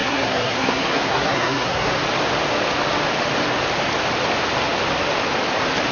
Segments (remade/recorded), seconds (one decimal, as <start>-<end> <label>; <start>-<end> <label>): 0.0-1.9 remade; 1.9-5.9 recorded